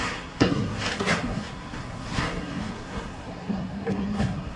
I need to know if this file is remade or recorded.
remade